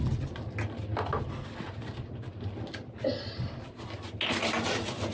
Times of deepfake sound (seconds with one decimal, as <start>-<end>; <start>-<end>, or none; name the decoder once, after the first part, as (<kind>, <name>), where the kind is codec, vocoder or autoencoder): none